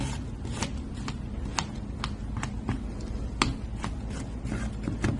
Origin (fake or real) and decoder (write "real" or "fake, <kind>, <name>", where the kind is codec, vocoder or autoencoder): real